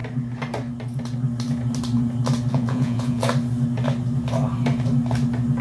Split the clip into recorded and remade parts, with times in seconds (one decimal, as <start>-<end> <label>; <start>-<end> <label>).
0.0-2.5 recorded; 2.5-3.2 remade; 3.2-5.6 recorded